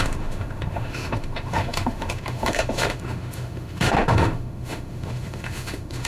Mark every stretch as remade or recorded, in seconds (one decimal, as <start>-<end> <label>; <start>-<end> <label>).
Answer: 0.0-6.1 remade